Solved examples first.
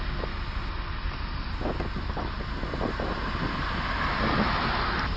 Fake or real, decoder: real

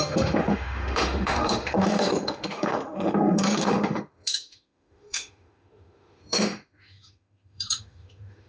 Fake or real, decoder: fake, autoencoder, DAC-VAE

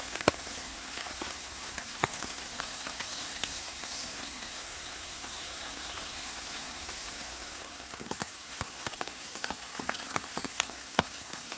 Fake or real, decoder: fake, codec, SNAC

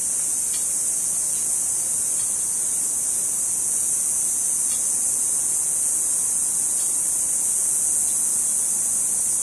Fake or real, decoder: real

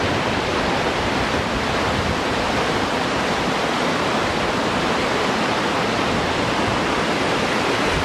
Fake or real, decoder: real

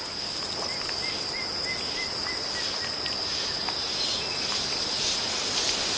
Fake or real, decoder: real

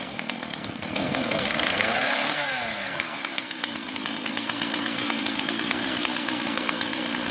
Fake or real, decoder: fake, codec, SNAC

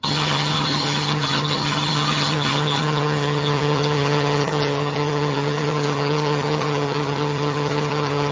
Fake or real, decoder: fake, vocoder, HiFi-GAN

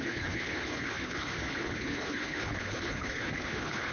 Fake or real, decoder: fake, codec, HILCodec